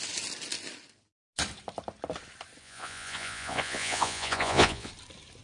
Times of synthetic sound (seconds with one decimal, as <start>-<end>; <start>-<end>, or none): 2.6-4.9